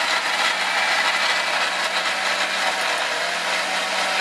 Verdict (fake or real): real